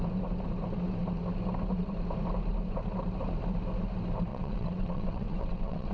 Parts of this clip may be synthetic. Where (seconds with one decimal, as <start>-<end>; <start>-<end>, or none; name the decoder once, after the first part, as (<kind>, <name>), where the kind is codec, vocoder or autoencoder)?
4.3-5.9 (vocoder, WaveNeXt)